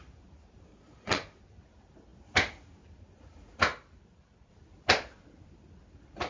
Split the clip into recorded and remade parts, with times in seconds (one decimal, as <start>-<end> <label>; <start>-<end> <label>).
0.0-0.7 recorded; 0.7-1.4 remade; 1.4-6.3 recorded